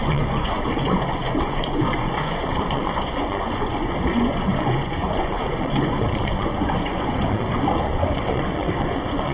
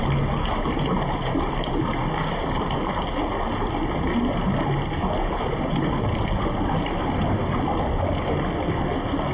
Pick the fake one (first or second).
first